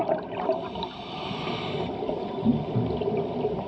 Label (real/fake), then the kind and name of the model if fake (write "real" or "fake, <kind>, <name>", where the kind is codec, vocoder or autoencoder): real